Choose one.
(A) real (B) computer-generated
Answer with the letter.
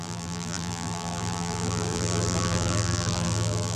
B